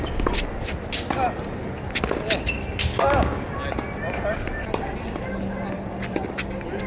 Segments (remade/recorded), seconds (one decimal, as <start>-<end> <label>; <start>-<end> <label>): 0.0-2.9 recorded; 2.9-3.5 remade; 3.5-6.9 recorded